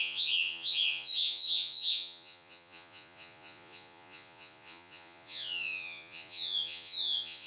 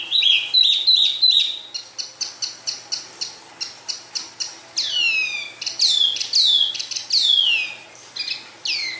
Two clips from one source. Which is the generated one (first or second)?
first